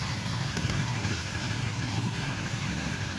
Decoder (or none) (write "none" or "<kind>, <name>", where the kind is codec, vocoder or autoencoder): codec, SNAC